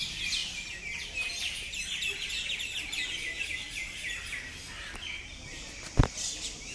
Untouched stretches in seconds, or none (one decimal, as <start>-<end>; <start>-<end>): 0.0-6.7